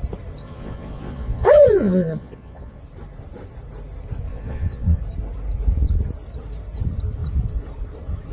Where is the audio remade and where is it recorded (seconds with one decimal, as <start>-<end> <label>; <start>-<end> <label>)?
0.0-0.4 recorded; 0.4-2.8 remade; 2.8-4.3 recorded; 4.3-5.0 remade; 5.0-8.3 recorded